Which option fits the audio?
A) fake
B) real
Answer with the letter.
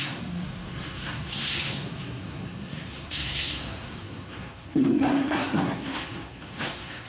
A